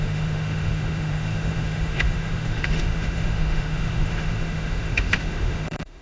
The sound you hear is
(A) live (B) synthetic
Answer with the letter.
B